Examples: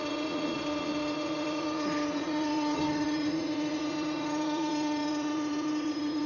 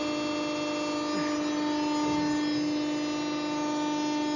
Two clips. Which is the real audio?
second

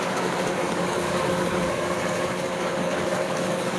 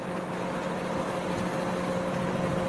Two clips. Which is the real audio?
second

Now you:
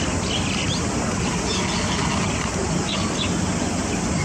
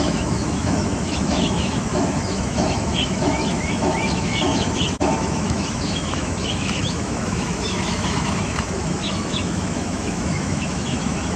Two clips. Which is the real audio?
first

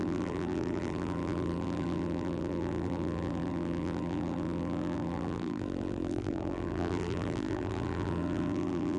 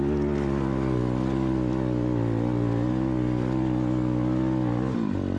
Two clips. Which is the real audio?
second